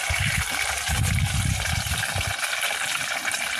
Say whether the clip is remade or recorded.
recorded